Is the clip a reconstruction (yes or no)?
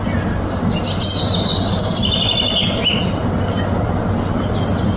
no